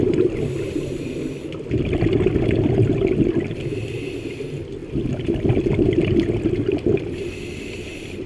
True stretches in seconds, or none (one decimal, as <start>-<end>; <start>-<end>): 0.0-8.3